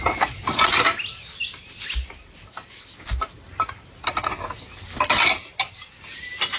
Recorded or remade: recorded